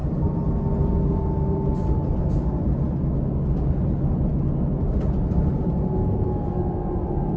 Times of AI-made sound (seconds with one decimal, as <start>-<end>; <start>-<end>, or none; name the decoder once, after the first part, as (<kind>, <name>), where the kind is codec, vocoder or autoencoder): none